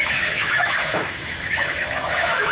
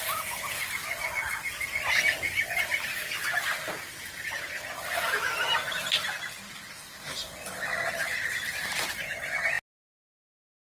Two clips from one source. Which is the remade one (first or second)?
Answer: first